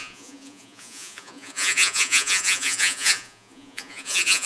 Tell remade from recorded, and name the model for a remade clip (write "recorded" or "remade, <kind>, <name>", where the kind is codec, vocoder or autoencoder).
remade, vocoder, Vocos